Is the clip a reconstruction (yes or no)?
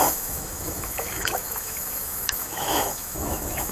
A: yes